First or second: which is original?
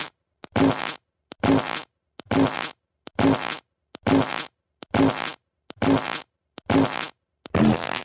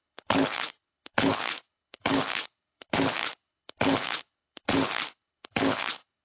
first